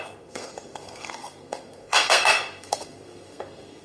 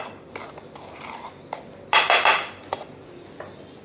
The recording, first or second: second